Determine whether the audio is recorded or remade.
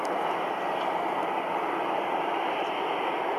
recorded